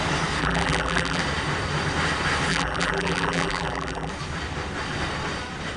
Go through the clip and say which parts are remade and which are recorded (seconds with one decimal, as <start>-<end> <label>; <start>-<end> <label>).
0.0-0.4 recorded; 0.4-1.2 remade; 1.2-2.5 recorded; 2.5-4.1 remade; 4.1-5.8 recorded

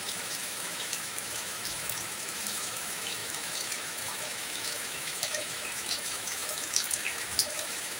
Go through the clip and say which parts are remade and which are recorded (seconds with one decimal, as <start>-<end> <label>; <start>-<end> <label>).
0.0-8.0 remade

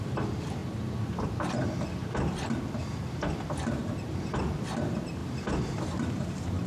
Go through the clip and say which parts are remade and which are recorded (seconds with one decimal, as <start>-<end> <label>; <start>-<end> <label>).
0.0-0.6 remade; 0.6-2.8 recorded; 2.8-6.7 remade